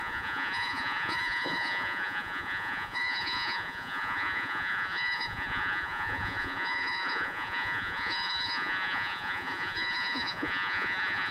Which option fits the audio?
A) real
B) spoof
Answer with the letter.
B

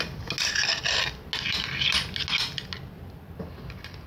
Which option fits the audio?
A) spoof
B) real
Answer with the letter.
B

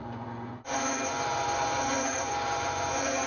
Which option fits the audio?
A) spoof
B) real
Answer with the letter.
A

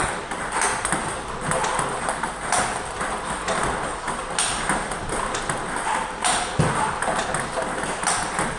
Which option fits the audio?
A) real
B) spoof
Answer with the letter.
A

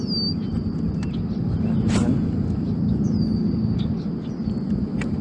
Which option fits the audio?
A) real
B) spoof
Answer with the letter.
A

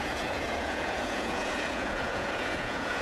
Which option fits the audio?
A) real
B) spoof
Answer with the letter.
B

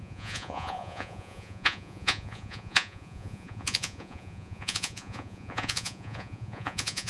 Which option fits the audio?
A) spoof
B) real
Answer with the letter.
A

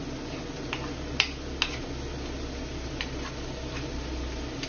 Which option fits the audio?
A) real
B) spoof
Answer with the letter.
A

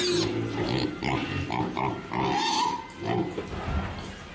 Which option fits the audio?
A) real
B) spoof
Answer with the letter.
A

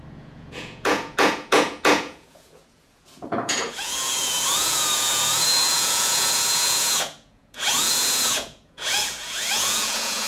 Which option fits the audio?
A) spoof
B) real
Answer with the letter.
A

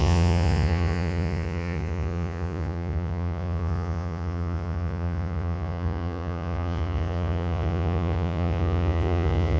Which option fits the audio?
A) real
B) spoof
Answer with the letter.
B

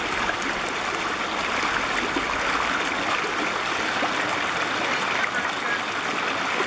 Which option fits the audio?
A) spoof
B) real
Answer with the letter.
B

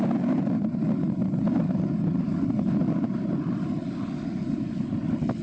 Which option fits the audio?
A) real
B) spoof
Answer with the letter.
A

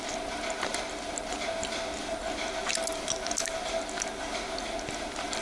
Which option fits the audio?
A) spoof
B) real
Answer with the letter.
B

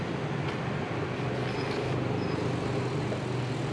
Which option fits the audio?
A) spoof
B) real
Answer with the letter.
B